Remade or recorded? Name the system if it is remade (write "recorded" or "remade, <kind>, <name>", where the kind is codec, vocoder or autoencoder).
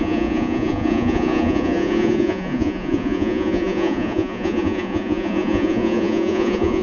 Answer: remade, vocoder, Vocos